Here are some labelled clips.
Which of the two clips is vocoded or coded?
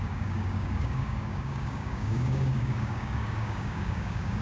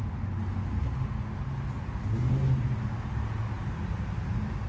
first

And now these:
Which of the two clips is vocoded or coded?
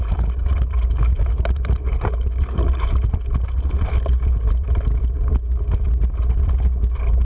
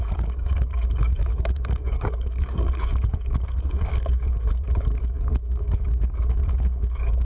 second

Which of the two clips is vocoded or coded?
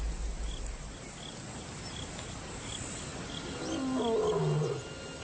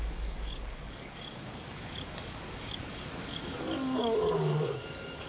second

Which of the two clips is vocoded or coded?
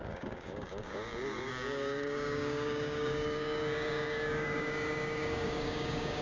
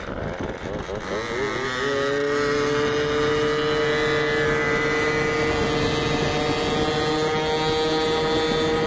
first